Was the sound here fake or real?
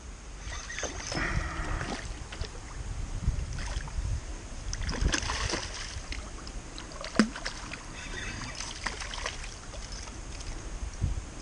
real